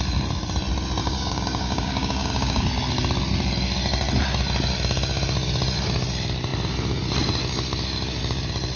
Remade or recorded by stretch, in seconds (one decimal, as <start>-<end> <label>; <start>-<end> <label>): 0.0-1.0 recorded; 1.0-2.6 remade; 2.6-8.8 recorded